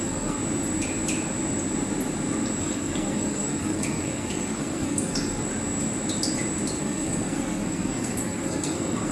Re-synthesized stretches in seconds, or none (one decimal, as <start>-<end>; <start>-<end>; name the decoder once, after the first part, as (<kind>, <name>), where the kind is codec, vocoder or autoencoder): 0.0-0.4 (codec, SNAC); 2.6-5.4; 6.8-9.1